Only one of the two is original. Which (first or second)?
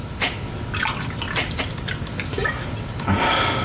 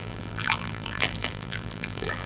first